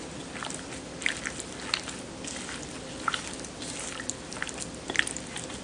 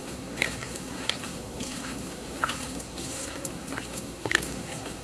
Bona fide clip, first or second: first